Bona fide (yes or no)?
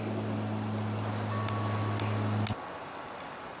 yes